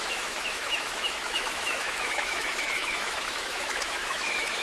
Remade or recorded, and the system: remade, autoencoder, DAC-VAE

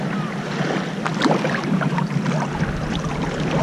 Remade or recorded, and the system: recorded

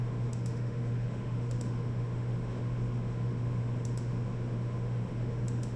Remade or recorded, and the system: remade, autoencoder, DAC-VAE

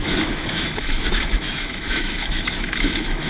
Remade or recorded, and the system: remade, autoencoder, DAC-VAE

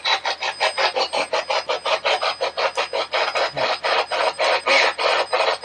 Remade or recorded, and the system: recorded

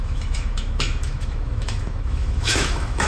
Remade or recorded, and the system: remade, autoencoder, DAC-VAE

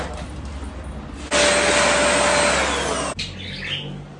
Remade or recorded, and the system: recorded